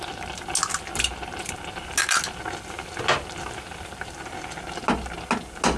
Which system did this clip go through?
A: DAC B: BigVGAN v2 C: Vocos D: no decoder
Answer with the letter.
D